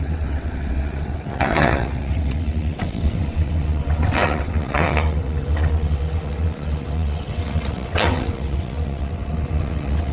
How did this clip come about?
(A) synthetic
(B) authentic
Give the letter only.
A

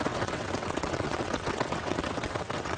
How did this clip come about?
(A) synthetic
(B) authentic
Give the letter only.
A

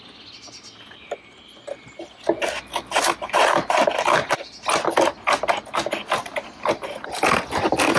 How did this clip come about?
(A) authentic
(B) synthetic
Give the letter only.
A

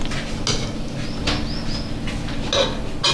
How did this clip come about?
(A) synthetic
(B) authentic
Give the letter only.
B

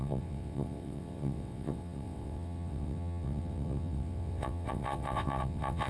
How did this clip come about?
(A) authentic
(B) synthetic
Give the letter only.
B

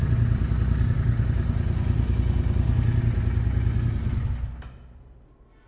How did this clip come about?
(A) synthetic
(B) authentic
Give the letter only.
B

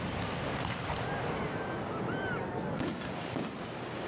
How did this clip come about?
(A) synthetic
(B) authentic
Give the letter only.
B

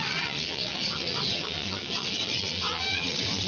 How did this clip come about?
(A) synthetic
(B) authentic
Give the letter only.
A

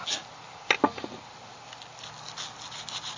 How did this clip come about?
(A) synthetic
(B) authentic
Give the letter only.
B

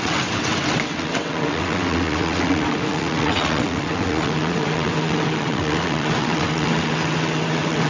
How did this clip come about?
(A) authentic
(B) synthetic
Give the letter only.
B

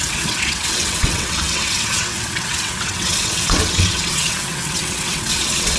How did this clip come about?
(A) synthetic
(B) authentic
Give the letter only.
A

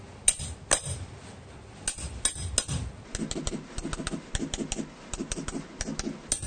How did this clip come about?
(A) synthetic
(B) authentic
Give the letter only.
B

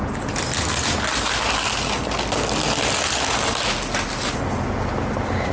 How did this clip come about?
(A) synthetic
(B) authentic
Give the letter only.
B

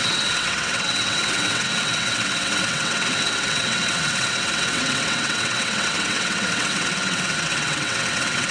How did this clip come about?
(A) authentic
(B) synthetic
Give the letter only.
B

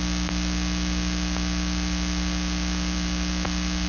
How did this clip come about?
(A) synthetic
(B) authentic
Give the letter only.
B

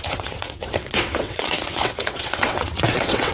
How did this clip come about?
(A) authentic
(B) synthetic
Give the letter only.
B